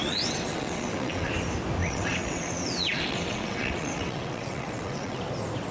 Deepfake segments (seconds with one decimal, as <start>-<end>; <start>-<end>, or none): 0.0-1.3; 1.8-5.2